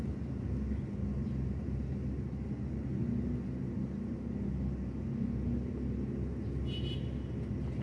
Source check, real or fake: real